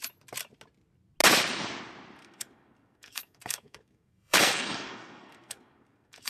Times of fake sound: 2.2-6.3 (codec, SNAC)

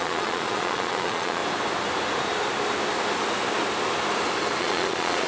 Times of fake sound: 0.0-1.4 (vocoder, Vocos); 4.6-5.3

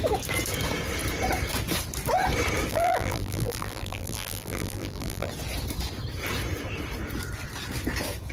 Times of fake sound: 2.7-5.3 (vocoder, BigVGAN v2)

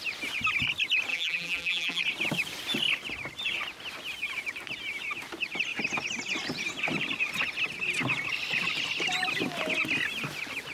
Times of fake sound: 1.1-2.0 (vocoder, BigVGAN v2)

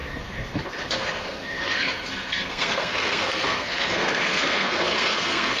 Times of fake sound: 0.0-5.6 (codec, SNAC)